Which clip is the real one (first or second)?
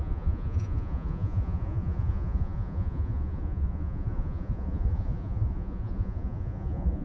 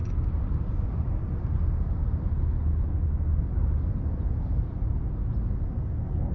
second